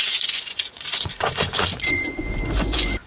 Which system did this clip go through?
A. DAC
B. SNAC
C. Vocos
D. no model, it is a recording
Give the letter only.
C